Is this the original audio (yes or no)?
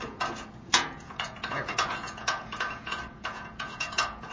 no